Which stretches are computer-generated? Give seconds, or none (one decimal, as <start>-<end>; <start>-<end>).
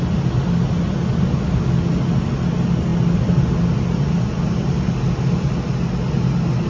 none